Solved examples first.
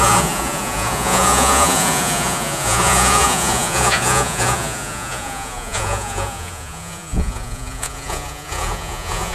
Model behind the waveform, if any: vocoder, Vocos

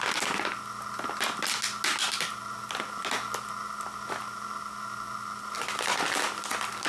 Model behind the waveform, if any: none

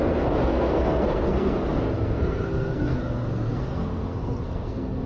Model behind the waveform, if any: codec, SNAC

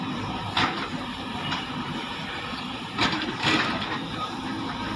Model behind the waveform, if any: vocoder, BigVGAN v2